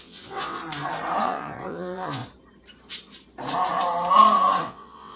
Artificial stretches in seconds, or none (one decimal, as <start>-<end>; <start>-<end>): 0.0-0.6; 1.2-2.2; 4.6-5.2